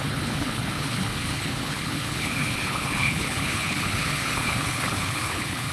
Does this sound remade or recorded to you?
remade